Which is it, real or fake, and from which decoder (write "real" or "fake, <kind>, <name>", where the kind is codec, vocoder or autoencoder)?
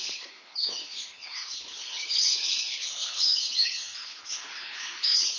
fake, codec, HILCodec